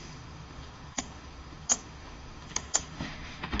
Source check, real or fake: fake